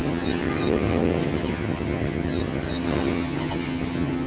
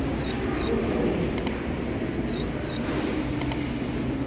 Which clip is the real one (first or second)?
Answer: second